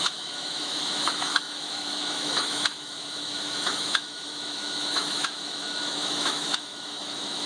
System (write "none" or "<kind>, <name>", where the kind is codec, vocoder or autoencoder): autoencoder, DAC-VAE